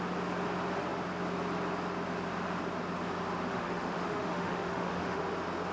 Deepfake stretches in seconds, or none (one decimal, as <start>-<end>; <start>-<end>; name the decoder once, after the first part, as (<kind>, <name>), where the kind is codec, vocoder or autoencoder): 3.5-5.2 (autoencoder, DAC-VAE)